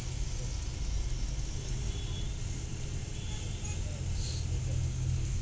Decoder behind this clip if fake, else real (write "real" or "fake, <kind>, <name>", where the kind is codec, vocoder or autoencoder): real